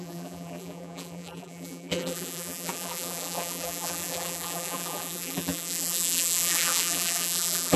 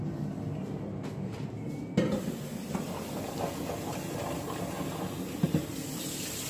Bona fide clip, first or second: second